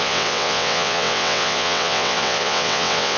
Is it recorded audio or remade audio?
remade